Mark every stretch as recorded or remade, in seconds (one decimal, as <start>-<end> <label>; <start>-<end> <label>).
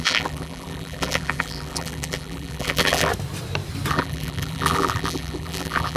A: 0.0-3.1 remade; 3.1-3.9 recorded; 3.9-6.0 remade